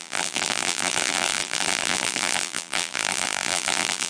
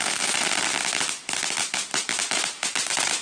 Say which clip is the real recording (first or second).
second